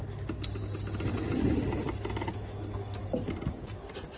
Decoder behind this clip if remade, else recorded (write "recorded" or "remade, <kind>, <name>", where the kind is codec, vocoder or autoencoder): recorded